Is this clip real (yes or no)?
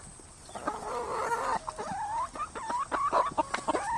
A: yes